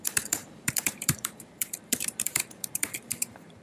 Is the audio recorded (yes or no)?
no